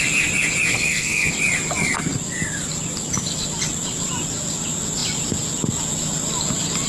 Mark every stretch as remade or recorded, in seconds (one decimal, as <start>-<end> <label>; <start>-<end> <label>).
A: 0.0-0.7 recorded; 0.7-1.3 remade; 1.3-6.9 recorded